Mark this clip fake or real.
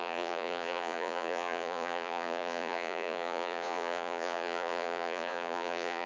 fake